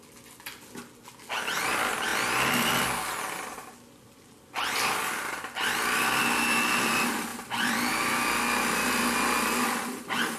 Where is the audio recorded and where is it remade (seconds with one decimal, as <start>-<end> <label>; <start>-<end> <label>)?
0.0-10.4 recorded